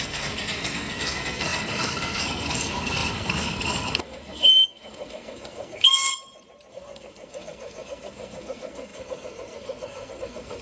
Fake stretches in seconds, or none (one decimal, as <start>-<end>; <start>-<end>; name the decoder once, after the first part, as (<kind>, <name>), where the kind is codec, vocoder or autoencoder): 0.0-6.1 (codec, SNAC); 6.7-10.6